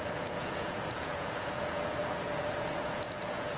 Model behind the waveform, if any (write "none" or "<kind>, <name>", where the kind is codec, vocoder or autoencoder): vocoder, Vocos